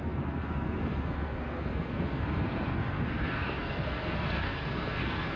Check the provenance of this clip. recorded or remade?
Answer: remade